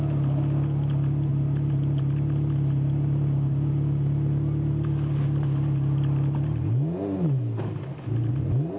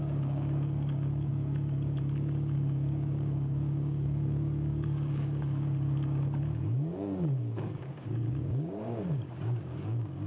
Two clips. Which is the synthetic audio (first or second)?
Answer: second